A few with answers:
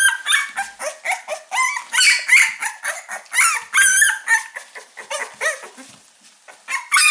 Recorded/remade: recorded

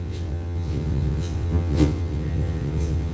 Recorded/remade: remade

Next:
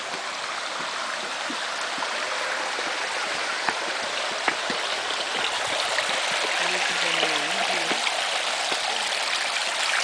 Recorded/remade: recorded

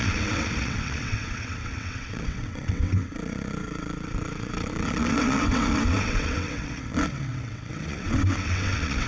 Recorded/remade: remade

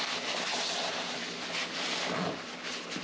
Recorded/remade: recorded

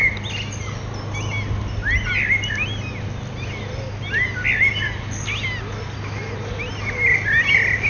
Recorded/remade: recorded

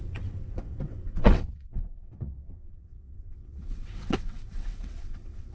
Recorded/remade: remade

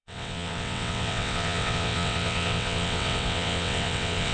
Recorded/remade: remade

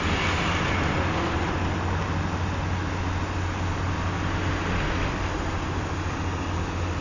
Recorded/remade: recorded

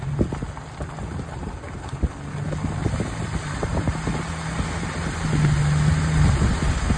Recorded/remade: recorded